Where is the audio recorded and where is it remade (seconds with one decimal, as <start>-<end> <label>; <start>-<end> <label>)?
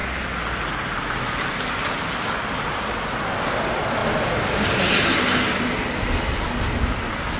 0.0-7.4 recorded